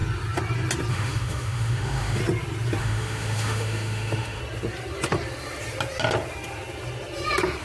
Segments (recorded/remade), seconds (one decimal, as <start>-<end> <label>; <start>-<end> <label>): 0.0-0.9 recorded; 0.9-2.2 remade; 2.2-2.8 recorded; 2.8-4.4 remade; 4.4-7.6 recorded